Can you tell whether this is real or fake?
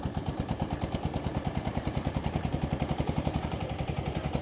fake